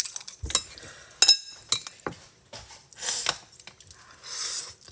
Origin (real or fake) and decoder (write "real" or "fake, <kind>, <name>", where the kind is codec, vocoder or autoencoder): real